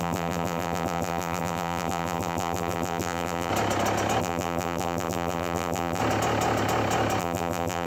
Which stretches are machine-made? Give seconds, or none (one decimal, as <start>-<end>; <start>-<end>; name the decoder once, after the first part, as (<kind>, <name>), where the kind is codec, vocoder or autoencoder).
0.0-3.5 (vocoder, BigVGAN v2); 4.2-6.0; 7.2-7.9